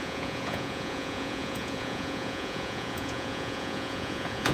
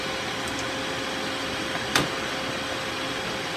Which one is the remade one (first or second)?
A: first